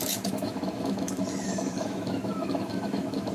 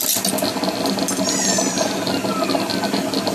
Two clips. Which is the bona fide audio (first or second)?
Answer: second